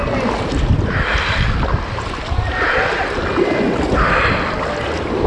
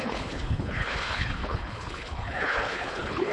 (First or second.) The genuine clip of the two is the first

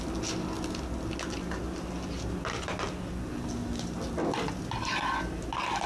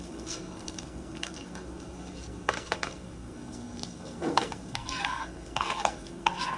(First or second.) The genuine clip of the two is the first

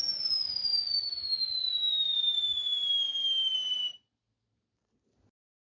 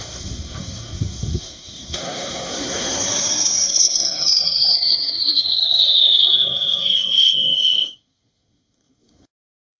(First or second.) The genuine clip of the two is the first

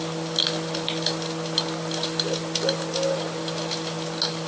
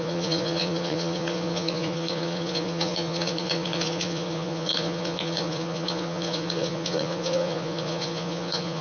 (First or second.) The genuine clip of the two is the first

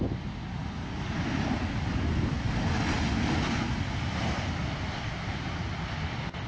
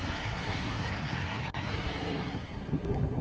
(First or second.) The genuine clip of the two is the first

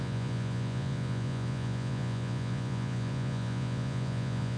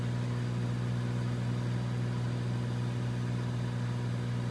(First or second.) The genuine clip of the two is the second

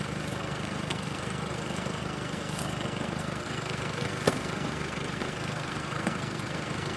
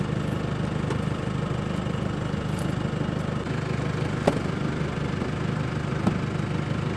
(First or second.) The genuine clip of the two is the second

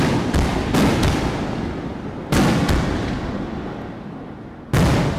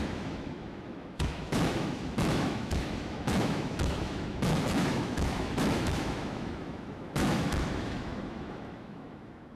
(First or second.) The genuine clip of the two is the first